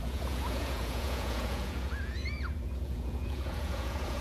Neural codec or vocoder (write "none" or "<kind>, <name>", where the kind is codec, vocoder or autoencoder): vocoder, Vocos